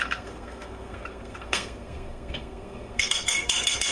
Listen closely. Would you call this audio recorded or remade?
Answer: remade